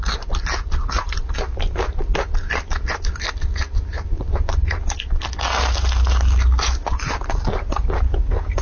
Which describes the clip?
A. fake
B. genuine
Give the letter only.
B